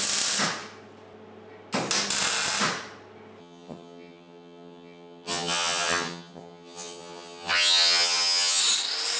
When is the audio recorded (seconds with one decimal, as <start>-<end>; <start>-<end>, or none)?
0.0-3.4; 8.6-9.2